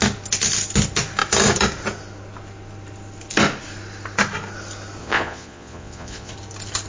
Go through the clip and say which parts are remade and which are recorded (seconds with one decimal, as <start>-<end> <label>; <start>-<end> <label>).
0.0-5.0 recorded; 5.0-6.3 remade; 6.3-6.9 recorded